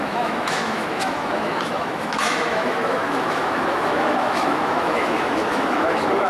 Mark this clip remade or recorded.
remade